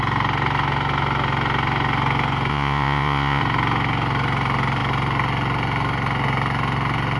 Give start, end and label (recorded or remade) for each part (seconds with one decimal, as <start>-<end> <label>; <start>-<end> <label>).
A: 0.0-2.5 recorded; 2.5-3.4 remade; 3.4-7.2 recorded